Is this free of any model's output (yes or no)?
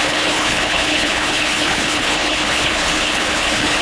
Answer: no